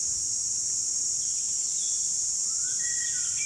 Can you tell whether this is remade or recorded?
remade